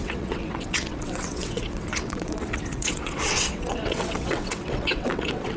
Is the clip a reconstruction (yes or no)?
yes